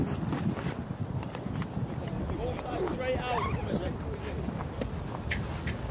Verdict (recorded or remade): recorded